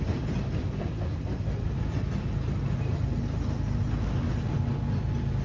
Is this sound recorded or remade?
recorded